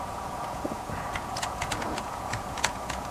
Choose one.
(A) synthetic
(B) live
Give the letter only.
A